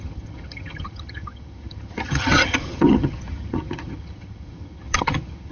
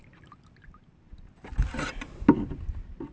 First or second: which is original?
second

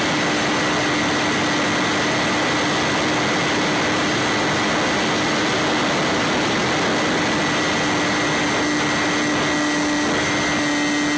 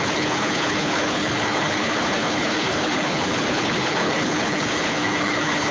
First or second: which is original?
first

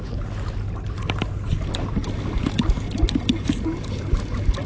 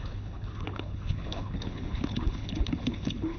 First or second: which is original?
first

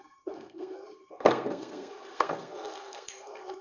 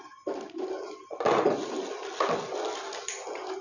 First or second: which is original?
second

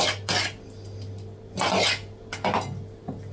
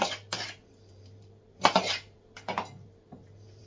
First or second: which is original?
first